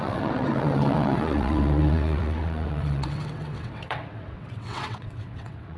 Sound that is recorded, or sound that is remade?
remade